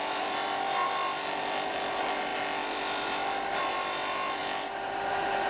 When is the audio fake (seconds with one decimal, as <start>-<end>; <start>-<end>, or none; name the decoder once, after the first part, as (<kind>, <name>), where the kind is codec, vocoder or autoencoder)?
none